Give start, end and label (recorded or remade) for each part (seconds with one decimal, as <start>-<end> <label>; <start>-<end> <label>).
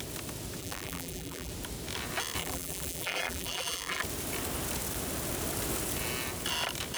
0.0-0.6 recorded; 0.6-1.5 remade; 1.5-2.4 recorded; 2.4-4.0 remade; 4.0-7.0 recorded